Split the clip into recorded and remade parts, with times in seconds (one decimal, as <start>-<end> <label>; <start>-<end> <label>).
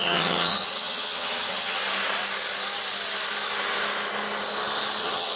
0.0-1.8 remade; 1.8-5.0 recorded; 5.0-5.4 remade